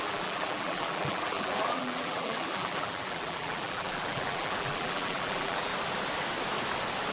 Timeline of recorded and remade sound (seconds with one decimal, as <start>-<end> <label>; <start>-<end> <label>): 0.0-5.7 remade; 5.7-7.1 recorded